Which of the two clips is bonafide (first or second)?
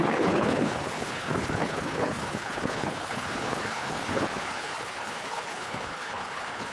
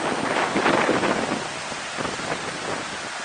second